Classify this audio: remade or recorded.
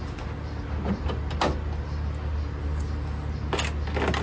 recorded